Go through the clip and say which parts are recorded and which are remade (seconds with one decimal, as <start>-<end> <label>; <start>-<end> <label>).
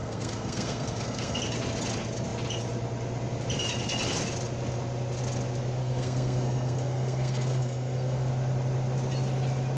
0.0-1.4 remade; 1.4-5.8 recorded; 5.8-8.3 remade; 8.3-9.8 recorded